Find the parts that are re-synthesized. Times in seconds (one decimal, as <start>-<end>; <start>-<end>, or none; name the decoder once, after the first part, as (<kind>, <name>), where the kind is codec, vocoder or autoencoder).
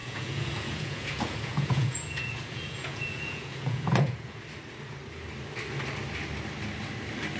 0.0-4.4 (vocoder, Vocos)